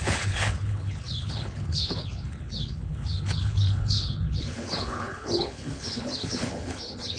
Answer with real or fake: fake